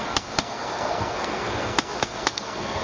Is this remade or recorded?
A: remade